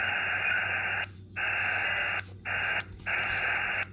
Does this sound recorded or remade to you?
recorded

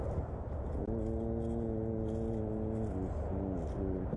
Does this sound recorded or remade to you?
recorded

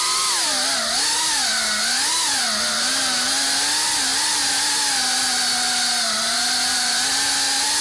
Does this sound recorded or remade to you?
recorded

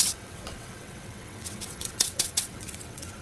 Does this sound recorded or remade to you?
remade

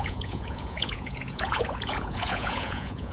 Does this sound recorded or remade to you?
remade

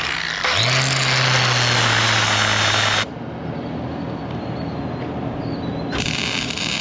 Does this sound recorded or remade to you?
recorded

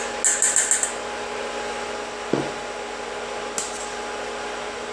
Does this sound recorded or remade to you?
recorded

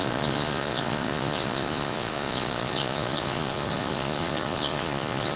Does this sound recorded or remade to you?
remade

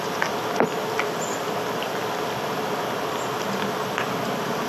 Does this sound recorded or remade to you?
recorded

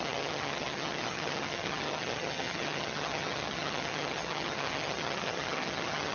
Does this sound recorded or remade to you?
remade